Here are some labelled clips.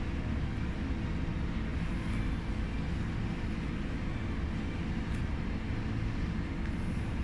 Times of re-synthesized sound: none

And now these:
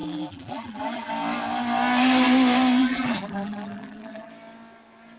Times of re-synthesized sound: 0.0-1.1 (vocoder, BigVGAN v2); 2.8-4.3

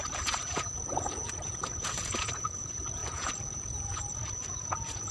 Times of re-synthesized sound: 0.0-5.1 (vocoder, Vocos)

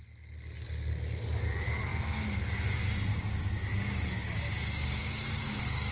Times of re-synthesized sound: 3.1-5.9 (codec, DAC)

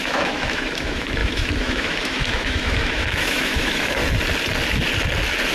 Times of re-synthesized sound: 0.0-4.0 (autoencoder, DAC-VAE)

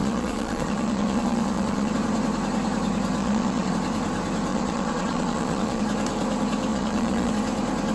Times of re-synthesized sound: 0.0-1.9 (vocoder, Vocos); 3.2-3.7; 4.5-5.8; 6.7-7.3

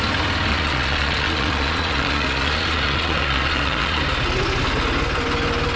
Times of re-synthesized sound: 0.5-4.0 (vocoder, Vocos)

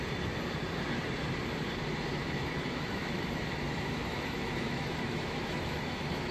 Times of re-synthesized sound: 2.2-6.3 (autoencoder, DAC-VAE)